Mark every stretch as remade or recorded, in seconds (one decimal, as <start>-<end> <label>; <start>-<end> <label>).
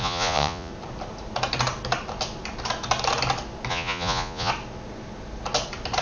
0.0-0.7 remade; 0.7-3.7 recorded; 3.7-4.5 remade; 4.5-6.0 recorded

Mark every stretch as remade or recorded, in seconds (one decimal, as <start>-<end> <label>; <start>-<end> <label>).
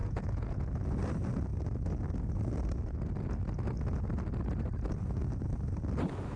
0.0-0.7 remade; 0.7-6.4 recorded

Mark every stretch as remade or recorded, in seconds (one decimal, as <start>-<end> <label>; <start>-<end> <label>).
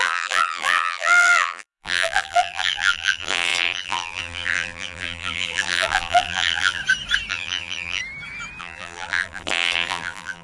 0.0-6.8 remade; 6.8-7.3 recorded; 7.3-8.0 remade; 8.0-8.6 recorded; 8.6-10.4 remade